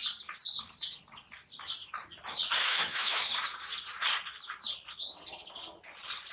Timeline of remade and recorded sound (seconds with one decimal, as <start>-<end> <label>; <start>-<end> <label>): 0.0-2.6 recorded; 2.6-3.2 remade; 3.2-6.3 recorded